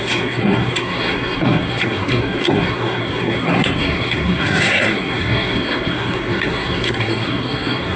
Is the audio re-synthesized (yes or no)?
yes